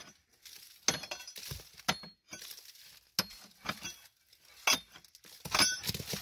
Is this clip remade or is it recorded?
recorded